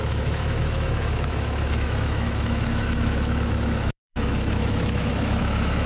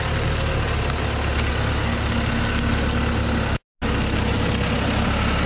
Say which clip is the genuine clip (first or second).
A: second